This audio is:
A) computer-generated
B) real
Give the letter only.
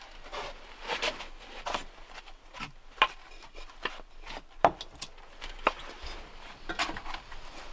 B